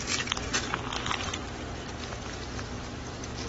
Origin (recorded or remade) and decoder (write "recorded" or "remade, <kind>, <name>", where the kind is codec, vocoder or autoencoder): recorded